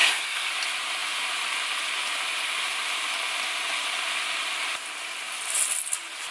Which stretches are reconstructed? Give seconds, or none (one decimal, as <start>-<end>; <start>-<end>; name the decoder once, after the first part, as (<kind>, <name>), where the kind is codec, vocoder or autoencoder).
0.0-0.5 (codec, SNAC)